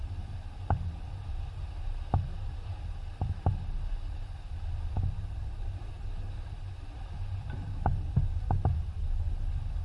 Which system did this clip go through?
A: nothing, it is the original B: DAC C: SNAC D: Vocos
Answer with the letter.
A